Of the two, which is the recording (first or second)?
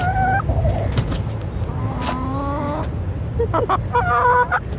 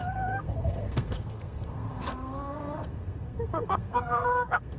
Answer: first